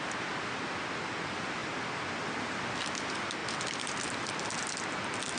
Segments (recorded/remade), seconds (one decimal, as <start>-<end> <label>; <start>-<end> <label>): 0.0-5.4 recorded